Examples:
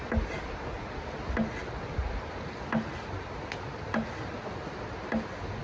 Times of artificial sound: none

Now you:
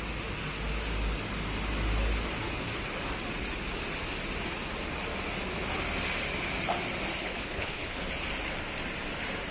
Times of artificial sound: 7.2-8.1 (codec, HILCodec)